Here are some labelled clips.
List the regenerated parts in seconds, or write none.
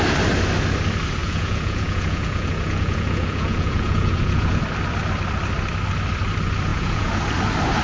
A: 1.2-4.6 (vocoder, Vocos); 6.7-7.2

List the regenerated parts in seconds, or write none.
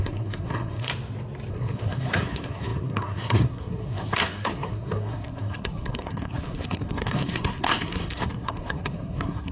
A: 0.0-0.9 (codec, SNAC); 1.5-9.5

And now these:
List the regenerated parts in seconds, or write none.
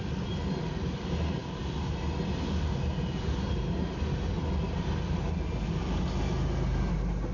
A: none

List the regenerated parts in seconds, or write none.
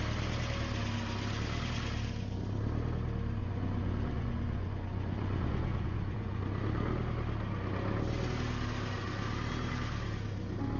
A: 3.4-6.4 (vocoder, Vocos)